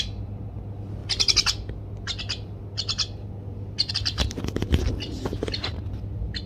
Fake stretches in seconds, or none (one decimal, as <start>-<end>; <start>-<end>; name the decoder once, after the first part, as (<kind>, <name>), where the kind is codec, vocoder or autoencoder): none